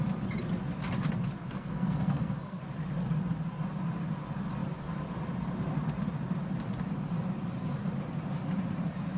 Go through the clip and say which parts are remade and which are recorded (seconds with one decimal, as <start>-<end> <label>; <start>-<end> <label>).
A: 0.0-1.4 recorded; 1.4-2.6 remade; 2.6-9.2 recorded